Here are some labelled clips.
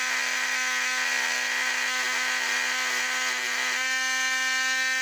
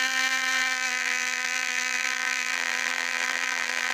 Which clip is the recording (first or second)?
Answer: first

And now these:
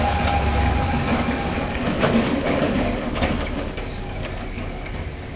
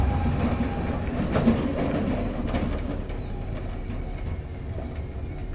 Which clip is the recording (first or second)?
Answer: second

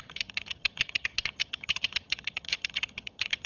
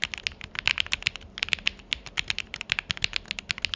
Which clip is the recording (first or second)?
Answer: second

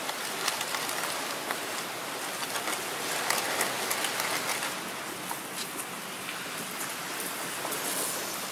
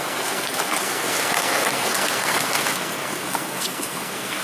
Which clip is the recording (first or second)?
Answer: first